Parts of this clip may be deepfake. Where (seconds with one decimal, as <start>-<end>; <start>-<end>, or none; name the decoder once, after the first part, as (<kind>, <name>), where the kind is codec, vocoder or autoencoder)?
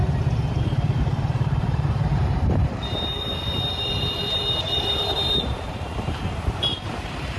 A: 0.6-3.3 (vocoder, BigVGAN v2); 3.8-7.4